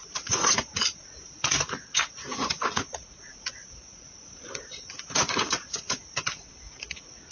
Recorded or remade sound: remade